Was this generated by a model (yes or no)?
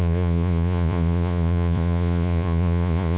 yes